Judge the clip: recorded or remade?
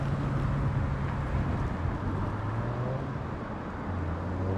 recorded